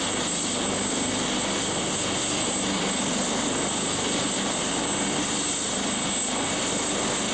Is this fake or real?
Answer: real